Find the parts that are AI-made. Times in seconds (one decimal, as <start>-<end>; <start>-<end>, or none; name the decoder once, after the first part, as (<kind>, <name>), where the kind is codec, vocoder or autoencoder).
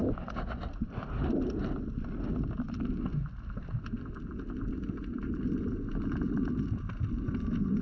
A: none